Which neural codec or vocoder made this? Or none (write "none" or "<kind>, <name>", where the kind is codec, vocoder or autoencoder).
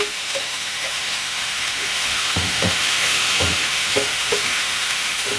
autoencoder, DAC-VAE